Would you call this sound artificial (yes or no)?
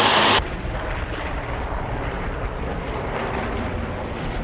yes